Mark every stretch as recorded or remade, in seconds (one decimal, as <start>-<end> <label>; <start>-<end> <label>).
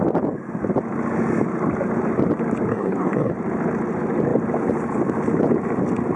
0.0-2.7 recorded; 2.7-3.3 remade; 3.3-6.2 recorded